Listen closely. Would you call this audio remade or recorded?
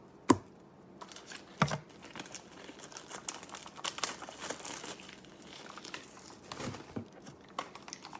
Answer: recorded